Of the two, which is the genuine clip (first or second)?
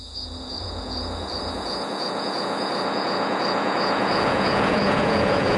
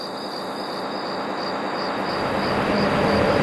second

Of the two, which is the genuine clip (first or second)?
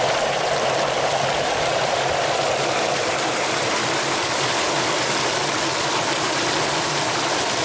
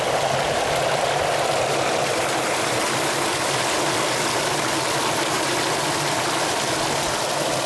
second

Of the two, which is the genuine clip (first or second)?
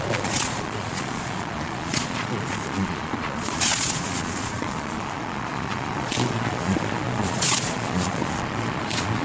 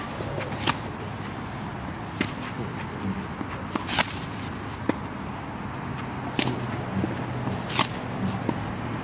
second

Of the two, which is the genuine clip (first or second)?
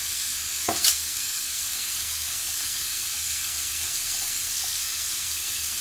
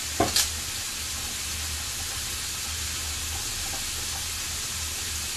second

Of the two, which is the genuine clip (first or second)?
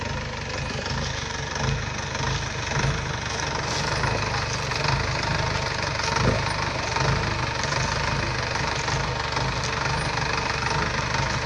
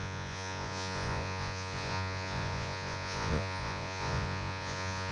first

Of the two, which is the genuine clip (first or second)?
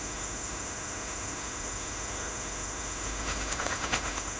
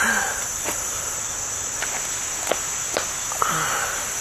second